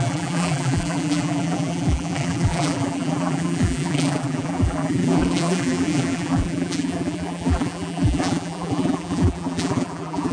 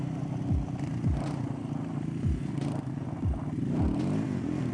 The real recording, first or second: second